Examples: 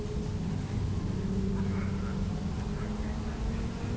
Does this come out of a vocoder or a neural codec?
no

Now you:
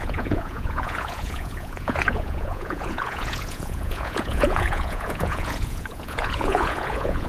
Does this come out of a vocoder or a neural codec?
yes